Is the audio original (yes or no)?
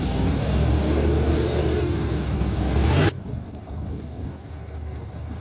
no